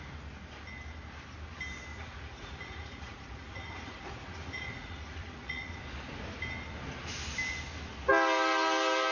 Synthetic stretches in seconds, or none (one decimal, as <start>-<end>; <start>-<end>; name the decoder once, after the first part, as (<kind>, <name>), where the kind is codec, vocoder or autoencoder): 1.9-5.8 (vocoder, Vocos)